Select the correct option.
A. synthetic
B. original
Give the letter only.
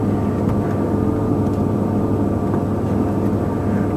B